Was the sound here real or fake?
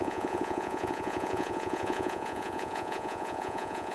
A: fake